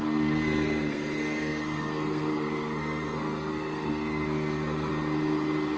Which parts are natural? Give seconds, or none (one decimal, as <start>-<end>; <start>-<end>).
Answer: 4.9-5.8